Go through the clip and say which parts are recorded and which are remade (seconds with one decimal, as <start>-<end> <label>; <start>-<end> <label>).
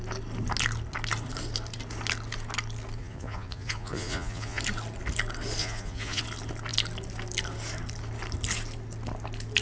0.0-3.0 recorded; 3.0-4.6 remade; 4.6-5.6 recorded; 5.6-6.2 remade; 6.2-9.6 recorded